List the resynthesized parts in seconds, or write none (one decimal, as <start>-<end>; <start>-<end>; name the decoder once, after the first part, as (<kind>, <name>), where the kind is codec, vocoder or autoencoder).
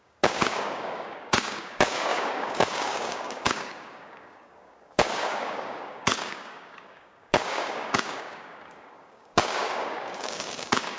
0.0-11.0 (codec, DAC)